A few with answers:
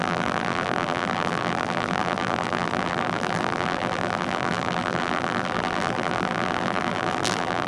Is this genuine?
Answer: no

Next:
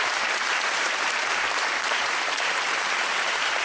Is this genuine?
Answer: no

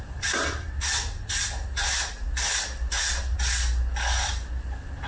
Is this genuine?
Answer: yes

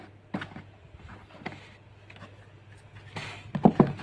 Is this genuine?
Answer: no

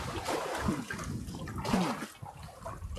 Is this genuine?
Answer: yes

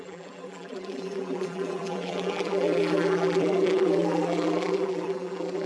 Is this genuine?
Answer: no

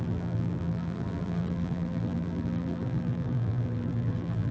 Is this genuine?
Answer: no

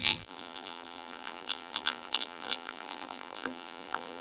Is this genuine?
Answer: no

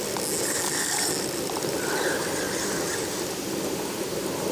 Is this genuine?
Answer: yes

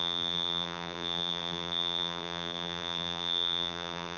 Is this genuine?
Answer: no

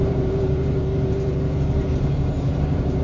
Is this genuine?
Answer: no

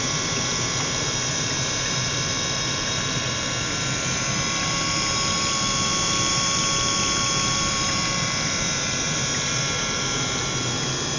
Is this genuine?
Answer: no